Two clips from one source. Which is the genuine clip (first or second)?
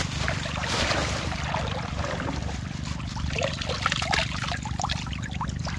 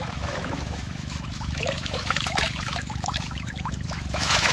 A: first